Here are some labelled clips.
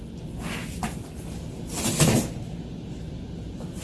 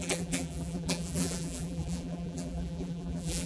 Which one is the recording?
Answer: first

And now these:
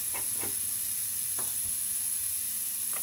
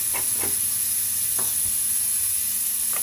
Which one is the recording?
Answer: second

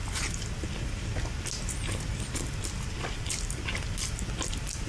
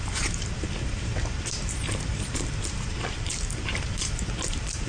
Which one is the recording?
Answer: first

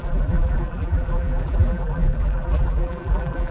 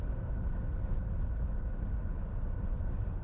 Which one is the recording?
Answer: second